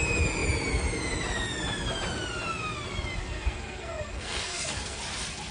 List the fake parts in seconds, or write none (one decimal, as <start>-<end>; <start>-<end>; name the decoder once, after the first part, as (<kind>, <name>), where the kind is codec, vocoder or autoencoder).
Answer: 3.2-5.0 (codec, SNAC)